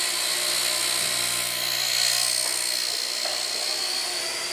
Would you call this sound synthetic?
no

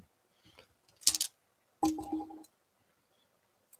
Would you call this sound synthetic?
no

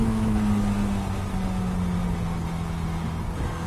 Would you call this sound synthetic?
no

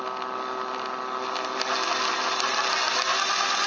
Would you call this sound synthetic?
no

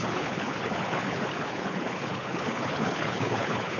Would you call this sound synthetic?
yes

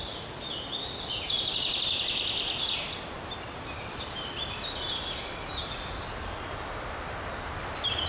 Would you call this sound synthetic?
no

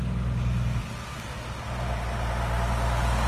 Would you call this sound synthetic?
no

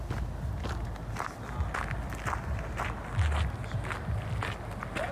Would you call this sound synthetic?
no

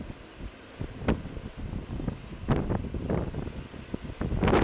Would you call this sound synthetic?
no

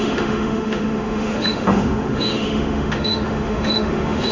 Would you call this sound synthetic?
yes